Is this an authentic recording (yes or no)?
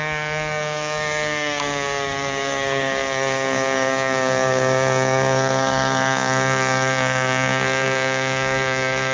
no